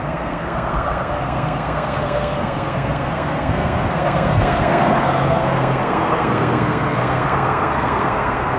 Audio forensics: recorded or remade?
remade